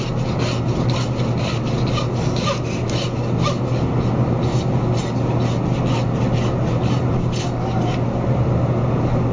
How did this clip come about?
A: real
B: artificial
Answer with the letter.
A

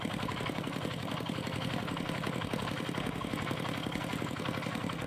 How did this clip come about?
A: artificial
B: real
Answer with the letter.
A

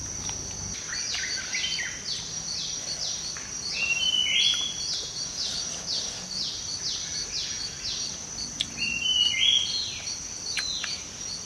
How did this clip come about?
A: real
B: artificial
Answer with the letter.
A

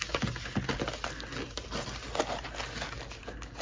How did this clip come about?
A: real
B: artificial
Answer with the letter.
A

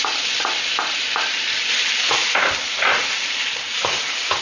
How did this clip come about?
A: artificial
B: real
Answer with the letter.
B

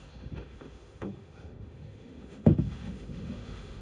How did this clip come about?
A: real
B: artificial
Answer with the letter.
B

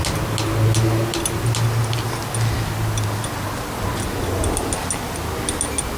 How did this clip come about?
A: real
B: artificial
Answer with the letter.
A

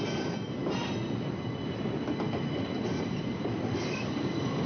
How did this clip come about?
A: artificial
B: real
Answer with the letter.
A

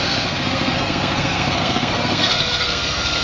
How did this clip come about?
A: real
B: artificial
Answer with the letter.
B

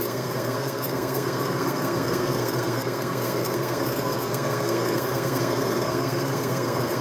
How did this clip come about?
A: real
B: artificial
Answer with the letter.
B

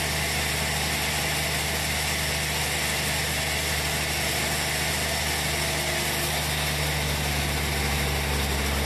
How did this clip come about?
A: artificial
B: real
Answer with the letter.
B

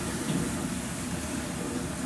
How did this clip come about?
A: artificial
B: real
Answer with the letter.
B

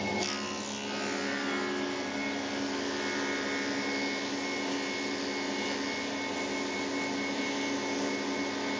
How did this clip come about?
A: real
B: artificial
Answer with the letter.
A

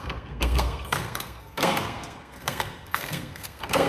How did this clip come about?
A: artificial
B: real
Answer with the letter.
A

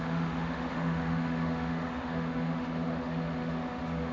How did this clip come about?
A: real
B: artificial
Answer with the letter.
B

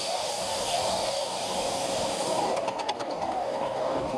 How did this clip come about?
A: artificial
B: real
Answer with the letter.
A